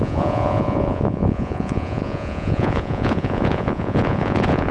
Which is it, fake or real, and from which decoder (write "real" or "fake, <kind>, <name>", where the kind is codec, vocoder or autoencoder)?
fake, vocoder, Vocos